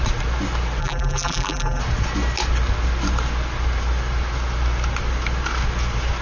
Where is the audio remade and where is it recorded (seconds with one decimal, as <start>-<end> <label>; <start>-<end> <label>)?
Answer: 0.0-0.8 recorded; 0.8-1.8 remade; 1.8-6.2 recorded